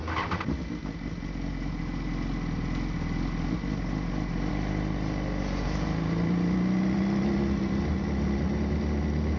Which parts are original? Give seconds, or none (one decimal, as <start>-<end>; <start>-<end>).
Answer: 0.0-9.4